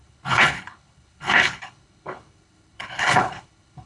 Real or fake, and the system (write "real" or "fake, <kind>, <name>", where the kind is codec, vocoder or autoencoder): fake, codec, HILCodec